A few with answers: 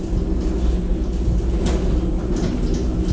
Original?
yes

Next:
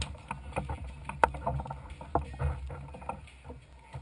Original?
yes